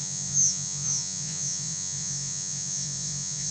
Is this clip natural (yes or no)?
no